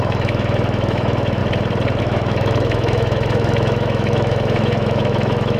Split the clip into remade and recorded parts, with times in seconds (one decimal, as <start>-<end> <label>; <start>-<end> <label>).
0.0-1.4 remade; 1.4-2.0 recorded; 2.0-5.6 remade